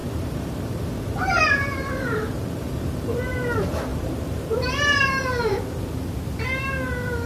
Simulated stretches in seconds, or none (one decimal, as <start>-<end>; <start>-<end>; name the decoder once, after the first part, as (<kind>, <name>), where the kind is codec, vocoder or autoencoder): 0.0-3.3 (vocoder, BigVGAN v2); 3.9-5.6